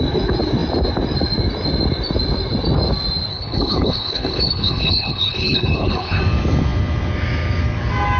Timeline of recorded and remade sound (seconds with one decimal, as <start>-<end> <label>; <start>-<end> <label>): 0.0-3.3 recorded; 3.3-6.2 remade; 6.2-8.2 recorded